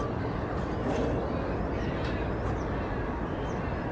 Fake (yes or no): no